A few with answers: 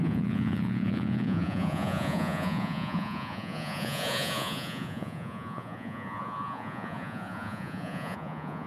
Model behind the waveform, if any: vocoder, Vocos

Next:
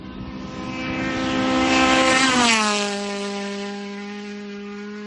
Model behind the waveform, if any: none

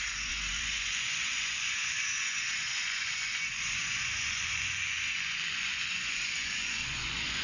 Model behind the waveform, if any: vocoder, Vocos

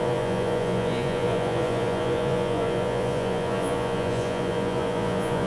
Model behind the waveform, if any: vocoder, Vocos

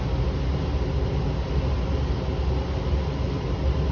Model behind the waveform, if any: none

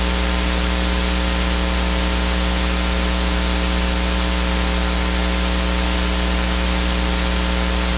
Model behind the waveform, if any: none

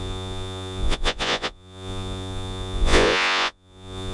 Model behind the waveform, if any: vocoder, Vocos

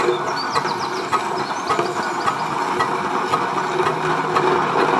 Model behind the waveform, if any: none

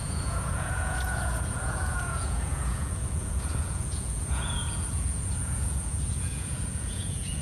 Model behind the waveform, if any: vocoder, Vocos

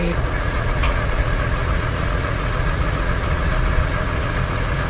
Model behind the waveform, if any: vocoder, Vocos